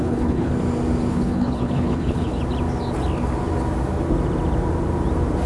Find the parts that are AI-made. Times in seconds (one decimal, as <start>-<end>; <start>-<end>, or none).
0.0-0.5; 1.1-2.4